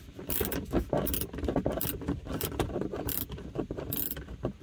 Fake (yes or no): no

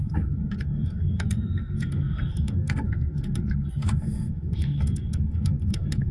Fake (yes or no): yes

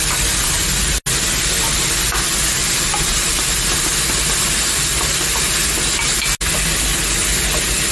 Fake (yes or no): no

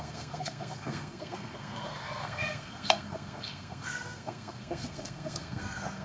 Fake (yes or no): yes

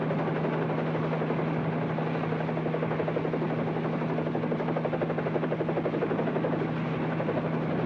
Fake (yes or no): no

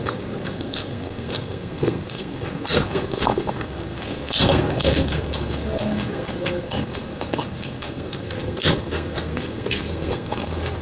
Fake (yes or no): yes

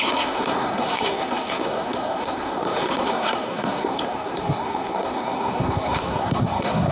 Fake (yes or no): yes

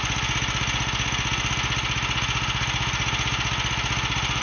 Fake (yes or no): no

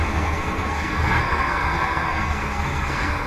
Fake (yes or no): yes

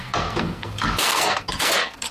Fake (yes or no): yes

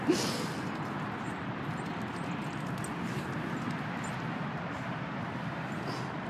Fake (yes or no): no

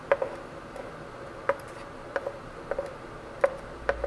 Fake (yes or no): no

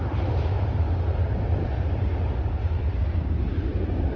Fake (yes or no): no